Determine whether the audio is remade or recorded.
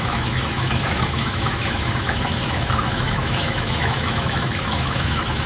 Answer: remade